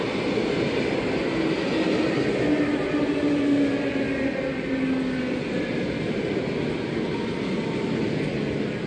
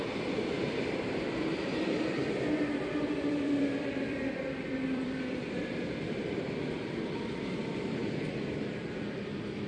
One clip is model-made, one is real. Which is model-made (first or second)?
second